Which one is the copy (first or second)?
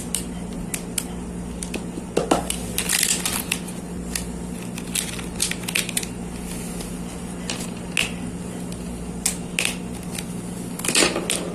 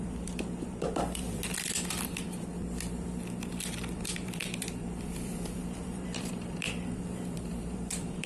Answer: second